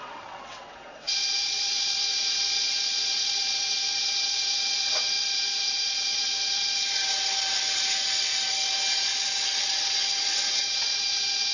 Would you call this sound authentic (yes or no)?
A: no